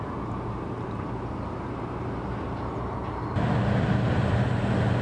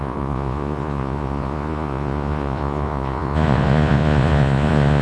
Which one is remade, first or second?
second